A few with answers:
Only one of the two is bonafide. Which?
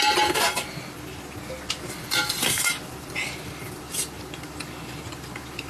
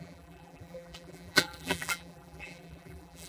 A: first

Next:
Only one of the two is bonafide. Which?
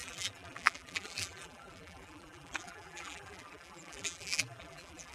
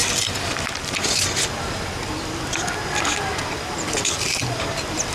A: second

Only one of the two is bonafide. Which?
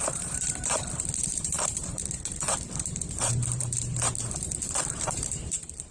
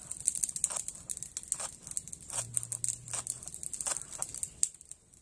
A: second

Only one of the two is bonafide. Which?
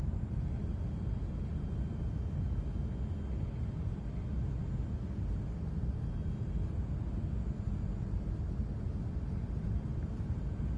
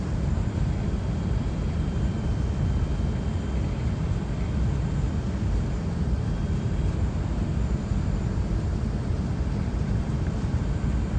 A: first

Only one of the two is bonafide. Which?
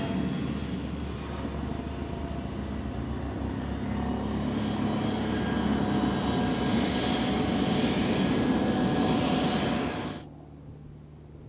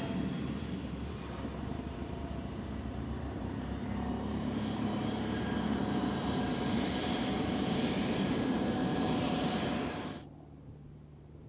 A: first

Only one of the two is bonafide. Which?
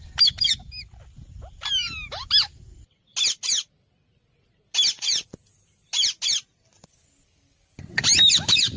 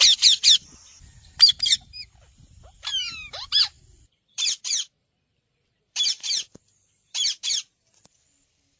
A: first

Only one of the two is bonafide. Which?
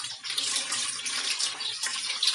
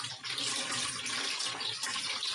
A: second